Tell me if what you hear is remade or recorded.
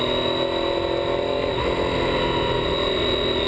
recorded